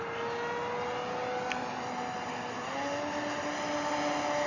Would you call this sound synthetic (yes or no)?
no